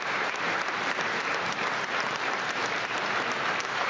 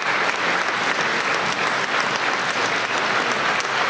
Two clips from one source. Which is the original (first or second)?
second